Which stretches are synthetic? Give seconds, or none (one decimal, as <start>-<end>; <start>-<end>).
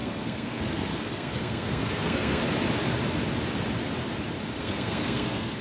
0.0-2.4; 4.6-5.6